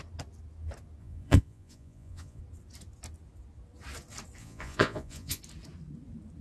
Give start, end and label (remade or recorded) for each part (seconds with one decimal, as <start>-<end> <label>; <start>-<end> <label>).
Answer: 0.0-1.0 recorded; 1.0-2.4 remade; 2.4-4.4 recorded; 4.4-5.4 remade; 5.4-6.4 recorded